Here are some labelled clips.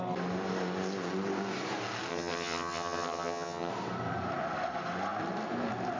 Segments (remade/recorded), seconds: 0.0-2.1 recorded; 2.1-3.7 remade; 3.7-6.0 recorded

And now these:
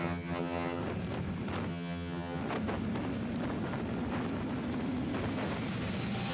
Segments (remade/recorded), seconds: 0.0-0.8 remade; 0.8-1.7 recorded; 1.7-2.4 remade; 2.4-6.3 recorded

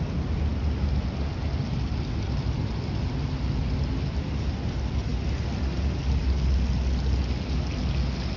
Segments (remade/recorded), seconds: 0.0-8.4 recorded

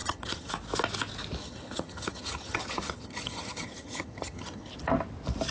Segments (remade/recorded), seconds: 0.0-0.5 remade; 0.5-1.4 recorded; 1.4-4.7 remade; 4.7-5.5 recorded